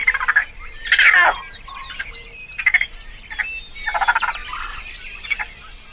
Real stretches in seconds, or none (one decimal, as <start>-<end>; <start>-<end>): 0.6-1.8; 2.8-4.4; 5.3-5.9